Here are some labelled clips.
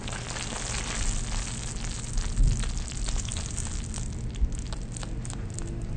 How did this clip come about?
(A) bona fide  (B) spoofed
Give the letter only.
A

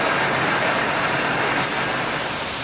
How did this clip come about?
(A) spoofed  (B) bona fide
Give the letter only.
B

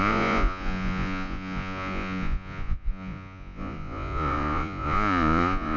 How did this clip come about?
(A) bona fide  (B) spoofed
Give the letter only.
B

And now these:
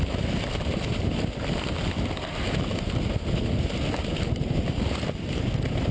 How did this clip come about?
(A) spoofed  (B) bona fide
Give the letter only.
B